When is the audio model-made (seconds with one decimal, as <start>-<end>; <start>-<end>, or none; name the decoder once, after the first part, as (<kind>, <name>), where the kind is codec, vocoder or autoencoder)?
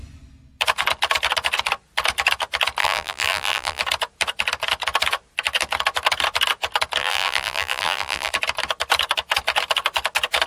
2.8-3.8 (vocoder, BigVGAN v2); 7.0-8.3